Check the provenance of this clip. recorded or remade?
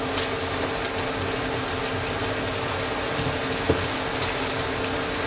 recorded